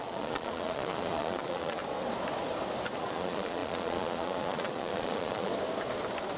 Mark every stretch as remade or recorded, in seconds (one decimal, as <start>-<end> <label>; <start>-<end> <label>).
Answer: 0.0-1.8 remade; 1.8-3.0 recorded; 3.0-5.5 remade; 5.5-6.4 recorded